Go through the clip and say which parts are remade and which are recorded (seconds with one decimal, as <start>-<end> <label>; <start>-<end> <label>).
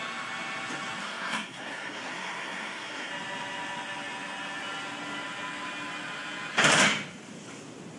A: 0.0-1.0 recorded; 1.0-3.1 remade; 3.1-8.0 recorded